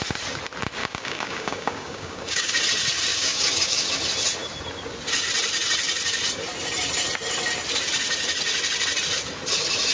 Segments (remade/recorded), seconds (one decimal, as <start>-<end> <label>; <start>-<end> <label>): 0.0-0.8 recorded; 0.8-2.6 remade; 2.6-3.1 recorded; 3.1-3.9 remade; 3.9-9.9 recorded